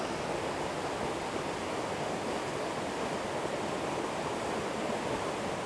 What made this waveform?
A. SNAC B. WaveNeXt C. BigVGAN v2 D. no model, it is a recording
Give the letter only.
D